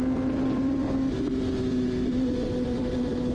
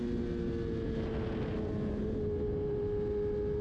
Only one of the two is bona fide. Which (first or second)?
second